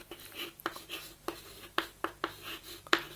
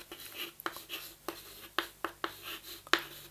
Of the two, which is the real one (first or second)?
second